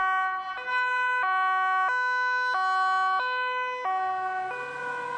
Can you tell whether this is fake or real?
real